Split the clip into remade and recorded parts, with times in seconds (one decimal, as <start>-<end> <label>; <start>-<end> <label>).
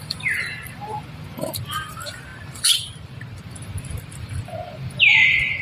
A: 0.0-5.6 remade